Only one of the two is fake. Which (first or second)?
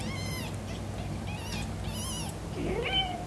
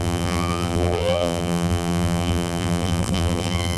second